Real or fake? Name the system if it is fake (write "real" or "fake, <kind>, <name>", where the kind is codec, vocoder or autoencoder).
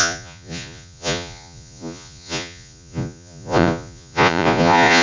fake, vocoder, Vocos